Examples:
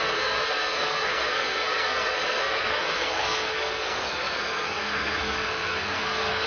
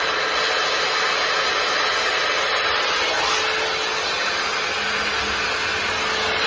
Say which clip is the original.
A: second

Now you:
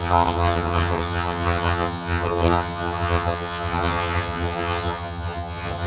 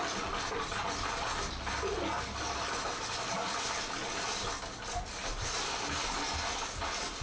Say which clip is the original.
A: second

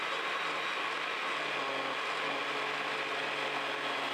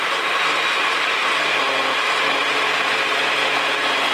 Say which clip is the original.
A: first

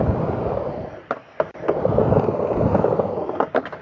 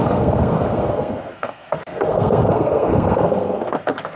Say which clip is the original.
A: first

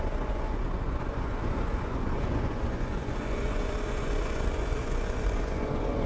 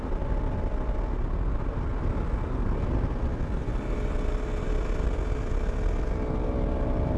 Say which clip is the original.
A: second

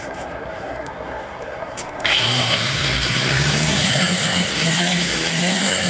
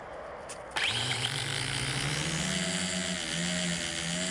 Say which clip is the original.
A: second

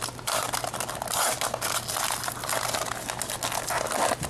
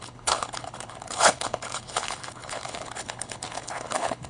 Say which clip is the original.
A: first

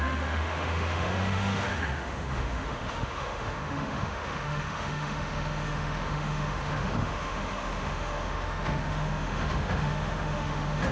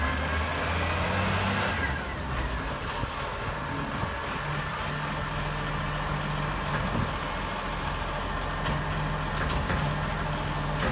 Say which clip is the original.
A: second